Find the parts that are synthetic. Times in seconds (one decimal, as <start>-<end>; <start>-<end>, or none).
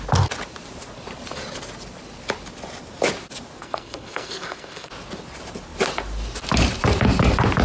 3.6-4.9